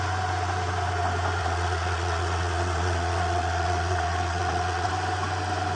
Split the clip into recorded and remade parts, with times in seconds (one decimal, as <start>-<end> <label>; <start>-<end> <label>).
0.0-1.4 recorded; 1.4-4.9 remade; 4.9-5.8 recorded